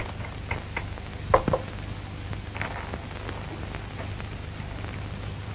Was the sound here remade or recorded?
recorded